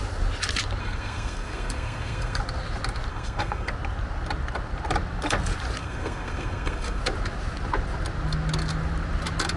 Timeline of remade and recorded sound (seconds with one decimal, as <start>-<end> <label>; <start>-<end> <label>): 0.0-0.8 recorded; 0.8-2.4 remade; 2.4-3.1 recorded; 3.1-3.7 remade; 3.7-5.8 recorded; 5.8-7.0 remade; 7.0-9.6 recorded